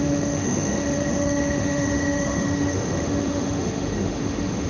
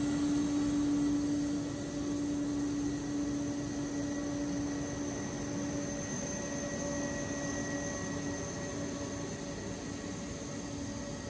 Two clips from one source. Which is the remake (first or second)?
first